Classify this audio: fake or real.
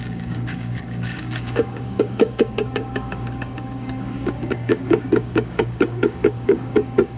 fake